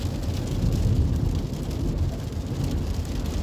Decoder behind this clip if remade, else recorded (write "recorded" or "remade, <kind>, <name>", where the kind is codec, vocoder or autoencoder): recorded